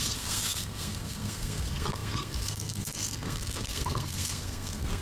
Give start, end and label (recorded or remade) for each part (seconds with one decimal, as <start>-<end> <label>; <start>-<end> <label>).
0.0-5.0 remade